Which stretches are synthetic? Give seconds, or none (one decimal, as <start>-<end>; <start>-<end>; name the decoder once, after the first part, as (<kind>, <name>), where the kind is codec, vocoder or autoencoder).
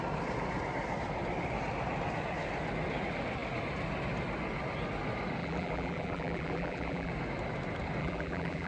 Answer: 5.4-7.1 (vocoder, BigVGAN v2); 8.0-8.7